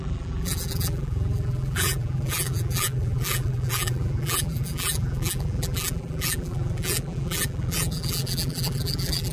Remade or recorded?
remade